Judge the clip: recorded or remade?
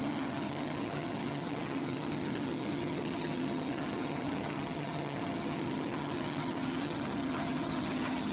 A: remade